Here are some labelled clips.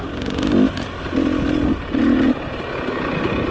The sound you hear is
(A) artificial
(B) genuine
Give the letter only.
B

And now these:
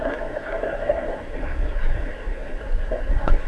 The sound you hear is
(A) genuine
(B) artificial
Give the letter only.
B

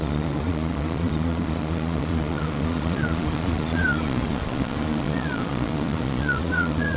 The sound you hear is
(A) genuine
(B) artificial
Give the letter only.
B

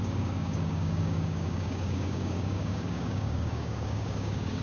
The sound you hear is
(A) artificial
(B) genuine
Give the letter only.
A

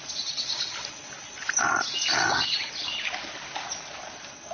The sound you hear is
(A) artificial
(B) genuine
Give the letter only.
B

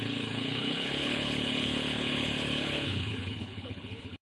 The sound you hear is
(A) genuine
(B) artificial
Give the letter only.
B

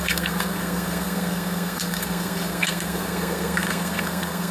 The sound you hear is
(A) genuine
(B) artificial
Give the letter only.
B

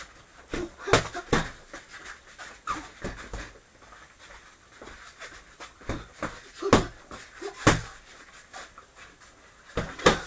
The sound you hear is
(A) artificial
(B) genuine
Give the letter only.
B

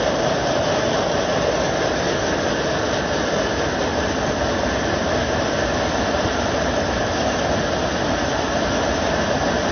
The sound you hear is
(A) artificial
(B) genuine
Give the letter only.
B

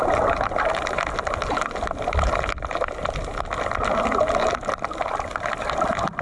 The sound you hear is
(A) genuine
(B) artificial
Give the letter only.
A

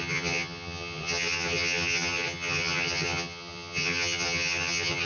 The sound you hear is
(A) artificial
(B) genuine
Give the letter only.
A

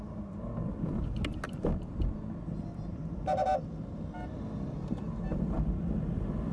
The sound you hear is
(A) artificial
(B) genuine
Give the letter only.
B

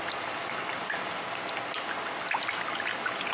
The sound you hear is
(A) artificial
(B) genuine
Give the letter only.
B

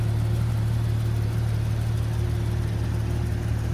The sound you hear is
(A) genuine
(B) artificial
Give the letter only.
A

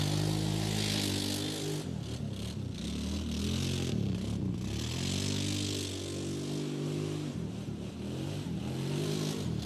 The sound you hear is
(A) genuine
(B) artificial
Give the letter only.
A